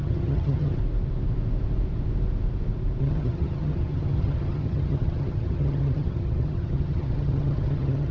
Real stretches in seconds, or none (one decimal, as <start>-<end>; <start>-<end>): 0.8-3.0